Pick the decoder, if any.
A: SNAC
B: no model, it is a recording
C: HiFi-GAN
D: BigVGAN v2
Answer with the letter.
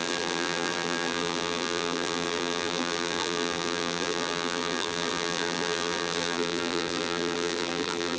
D